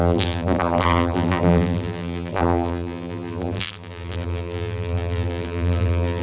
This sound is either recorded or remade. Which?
remade